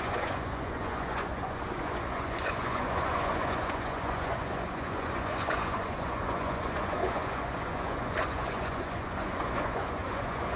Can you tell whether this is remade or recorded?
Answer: remade